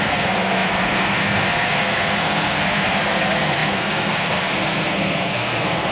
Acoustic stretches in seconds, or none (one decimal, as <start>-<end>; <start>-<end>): none

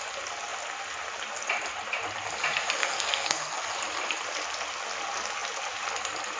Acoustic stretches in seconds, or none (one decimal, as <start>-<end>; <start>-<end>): 0.0-2.8; 3.7-6.4